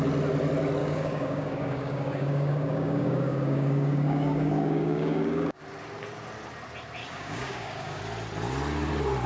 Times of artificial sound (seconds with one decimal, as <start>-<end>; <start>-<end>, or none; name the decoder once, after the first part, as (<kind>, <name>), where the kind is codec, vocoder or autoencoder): 0.8-5.6 (codec, DAC); 7.0-8.0